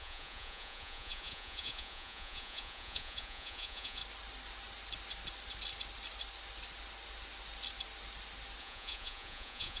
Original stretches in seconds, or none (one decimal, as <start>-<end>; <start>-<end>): 4.0-8.6